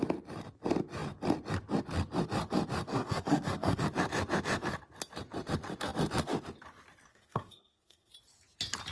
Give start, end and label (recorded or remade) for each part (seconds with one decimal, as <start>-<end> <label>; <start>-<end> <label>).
0.0-2.9 recorded; 2.9-3.8 remade; 3.8-7.1 recorded; 7.1-8.1 remade; 8.1-8.9 recorded